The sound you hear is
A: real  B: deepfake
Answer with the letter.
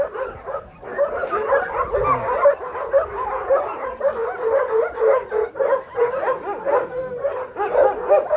A